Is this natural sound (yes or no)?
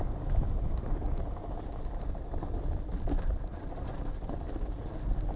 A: yes